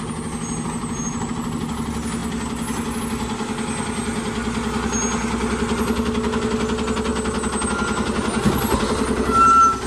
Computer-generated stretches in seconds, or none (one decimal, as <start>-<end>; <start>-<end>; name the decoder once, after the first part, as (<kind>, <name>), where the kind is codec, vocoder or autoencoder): none